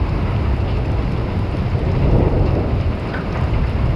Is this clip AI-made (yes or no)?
no